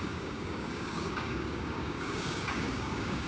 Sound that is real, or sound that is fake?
fake